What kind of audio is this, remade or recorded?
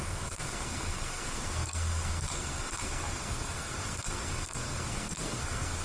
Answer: remade